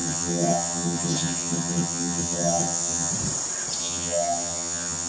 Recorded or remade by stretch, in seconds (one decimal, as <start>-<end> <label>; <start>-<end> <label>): 0.0-3.1 remade; 3.1-3.8 recorded; 3.8-5.1 remade